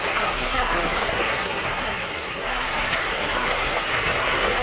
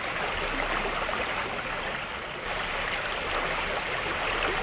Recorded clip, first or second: second